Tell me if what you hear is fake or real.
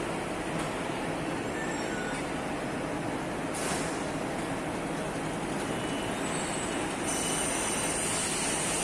real